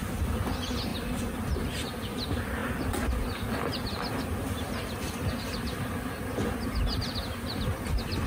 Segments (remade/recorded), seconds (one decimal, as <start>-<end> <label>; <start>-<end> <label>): 0.0-8.3 recorded